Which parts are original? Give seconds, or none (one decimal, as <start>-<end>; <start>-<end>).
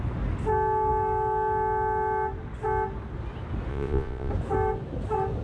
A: 0.0-3.7; 4.3-5.4